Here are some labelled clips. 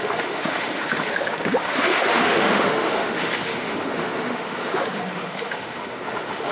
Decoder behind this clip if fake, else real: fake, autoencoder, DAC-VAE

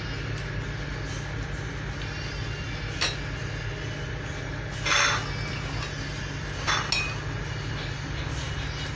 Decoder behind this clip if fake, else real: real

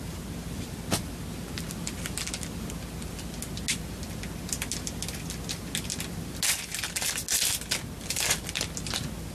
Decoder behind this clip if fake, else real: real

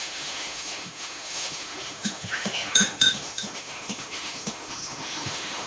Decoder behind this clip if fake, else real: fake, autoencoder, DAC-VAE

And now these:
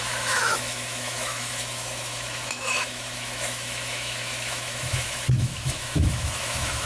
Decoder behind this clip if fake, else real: fake, autoencoder, DAC-VAE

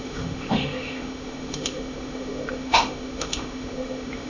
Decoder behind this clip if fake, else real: fake, autoencoder, DAC-VAE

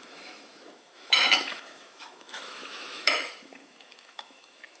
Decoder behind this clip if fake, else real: fake, autoencoder, DAC-VAE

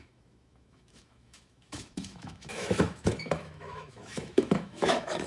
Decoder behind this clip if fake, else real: fake, autoencoder, DAC-VAE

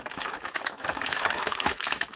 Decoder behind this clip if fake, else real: fake, autoencoder, DAC-VAE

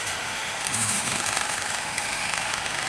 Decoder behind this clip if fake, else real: fake, autoencoder, DAC-VAE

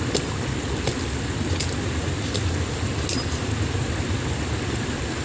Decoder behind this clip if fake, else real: real